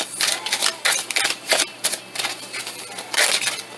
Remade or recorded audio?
recorded